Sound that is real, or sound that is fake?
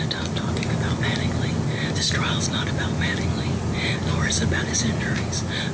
real